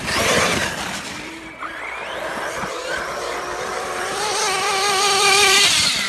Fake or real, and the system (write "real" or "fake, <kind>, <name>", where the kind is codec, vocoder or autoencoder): fake, vocoder, BigVGAN v2